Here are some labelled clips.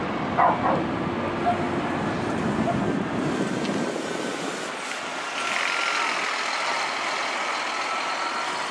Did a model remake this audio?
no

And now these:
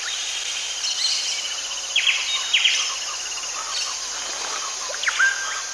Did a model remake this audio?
no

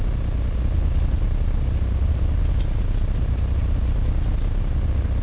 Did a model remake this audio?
no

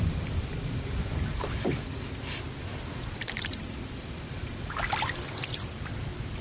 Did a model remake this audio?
no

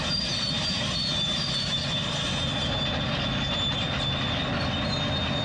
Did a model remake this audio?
no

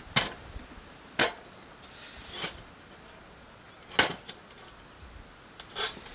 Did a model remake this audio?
no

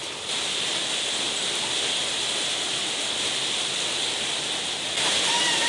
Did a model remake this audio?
no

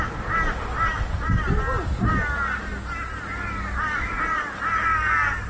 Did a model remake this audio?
no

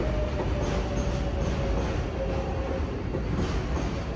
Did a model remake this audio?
no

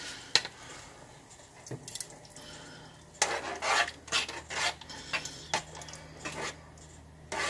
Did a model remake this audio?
no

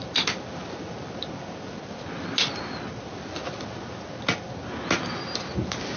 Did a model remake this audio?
no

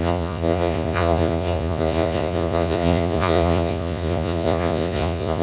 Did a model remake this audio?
yes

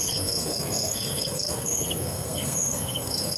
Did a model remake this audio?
yes